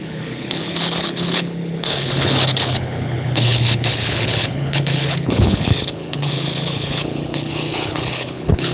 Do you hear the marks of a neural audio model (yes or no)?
yes